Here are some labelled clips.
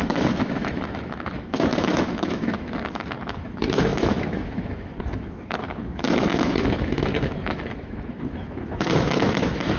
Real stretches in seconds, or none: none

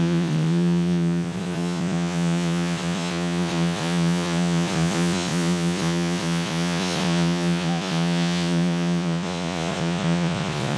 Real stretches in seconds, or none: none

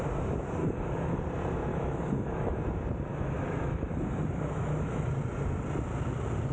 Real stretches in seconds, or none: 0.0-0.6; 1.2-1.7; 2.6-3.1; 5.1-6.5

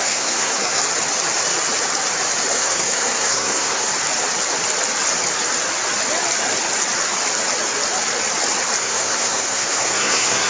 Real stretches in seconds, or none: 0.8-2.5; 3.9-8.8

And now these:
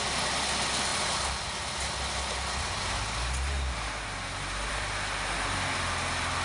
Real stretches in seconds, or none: 0.0-6.4

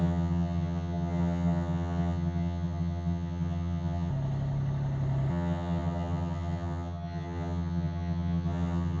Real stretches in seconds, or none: 4.1-5.3

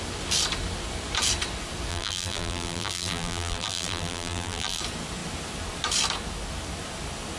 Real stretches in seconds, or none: 0.0-1.9; 4.8-7.4